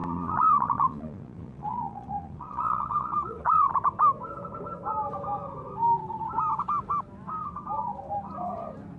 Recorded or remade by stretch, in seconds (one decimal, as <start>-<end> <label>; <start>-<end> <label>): 0.0-3.7 remade; 3.7-9.0 recorded